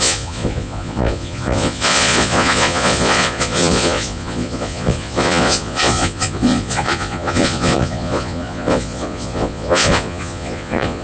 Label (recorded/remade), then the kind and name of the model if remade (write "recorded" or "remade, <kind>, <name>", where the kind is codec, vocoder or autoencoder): remade, vocoder, Vocos